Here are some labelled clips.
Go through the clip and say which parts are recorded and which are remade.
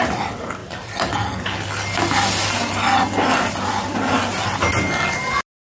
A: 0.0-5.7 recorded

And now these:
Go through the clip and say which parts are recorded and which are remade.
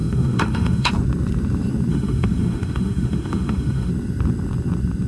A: 0.0-0.9 remade; 0.9-1.9 recorded; 1.9-3.9 remade; 3.9-5.1 recorded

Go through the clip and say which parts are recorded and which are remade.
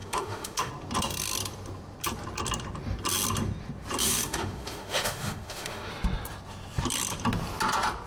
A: 0.0-0.7 remade; 0.7-4.0 recorded; 4.0-5.9 remade; 5.9-8.1 recorded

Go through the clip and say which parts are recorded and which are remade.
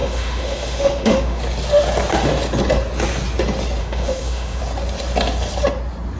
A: 0.0-1.4 remade; 1.4-3.8 recorded; 3.8-4.6 remade; 4.6-6.2 recorded